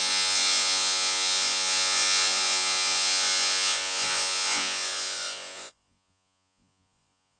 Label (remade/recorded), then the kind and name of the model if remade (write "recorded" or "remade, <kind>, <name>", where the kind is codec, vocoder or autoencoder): remade, vocoder, Vocos